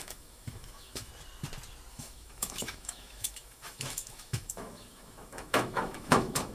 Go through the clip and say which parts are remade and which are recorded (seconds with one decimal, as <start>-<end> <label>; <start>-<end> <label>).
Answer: 0.0-1.1 remade; 1.1-1.9 recorded; 1.9-6.5 remade